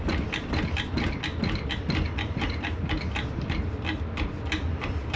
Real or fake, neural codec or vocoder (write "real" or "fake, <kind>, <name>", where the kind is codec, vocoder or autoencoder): fake, vocoder, BigVGAN v2